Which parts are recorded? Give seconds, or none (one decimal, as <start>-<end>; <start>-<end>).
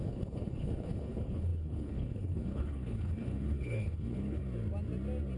4.4-5.4